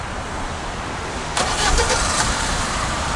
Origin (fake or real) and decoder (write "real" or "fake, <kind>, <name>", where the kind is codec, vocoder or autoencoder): fake, vocoder, BigVGAN v2